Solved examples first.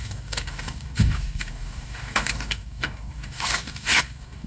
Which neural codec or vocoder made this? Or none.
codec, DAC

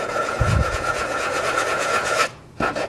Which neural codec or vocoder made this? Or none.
vocoder, Vocos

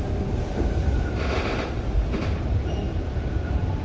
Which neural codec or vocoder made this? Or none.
vocoder, BigVGAN v2